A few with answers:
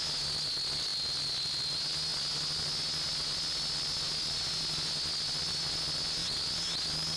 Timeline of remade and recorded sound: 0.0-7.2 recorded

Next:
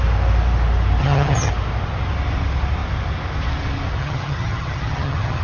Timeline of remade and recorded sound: 0.0-1.0 recorded; 1.0-1.5 remade; 1.5-4.0 recorded; 4.0-5.4 remade